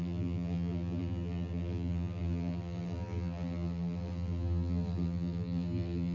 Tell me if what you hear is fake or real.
fake